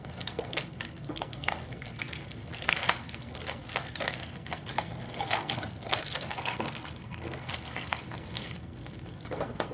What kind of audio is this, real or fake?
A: fake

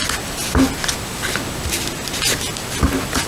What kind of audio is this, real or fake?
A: real